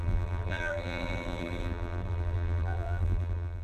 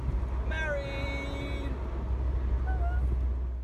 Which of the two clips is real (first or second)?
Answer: second